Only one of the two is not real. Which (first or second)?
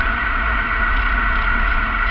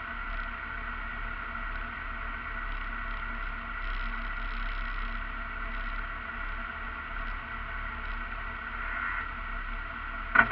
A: first